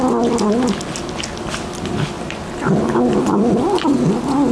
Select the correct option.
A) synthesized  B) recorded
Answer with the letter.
B